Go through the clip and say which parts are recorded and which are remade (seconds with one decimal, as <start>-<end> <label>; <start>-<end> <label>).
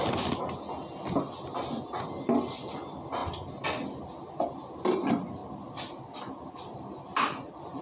0.0-7.8 recorded